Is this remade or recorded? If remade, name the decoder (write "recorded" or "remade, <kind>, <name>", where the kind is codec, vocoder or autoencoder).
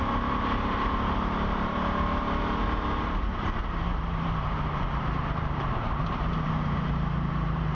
remade, vocoder, BigVGAN v2